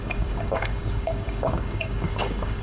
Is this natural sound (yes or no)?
no